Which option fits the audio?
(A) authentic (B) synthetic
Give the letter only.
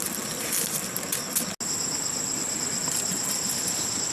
A